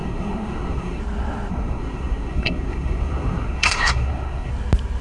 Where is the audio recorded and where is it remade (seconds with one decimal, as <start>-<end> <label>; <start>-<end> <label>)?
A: 0.0-1.0 remade; 1.0-1.5 recorded; 1.5-4.5 remade; 4.5-5.0 recorded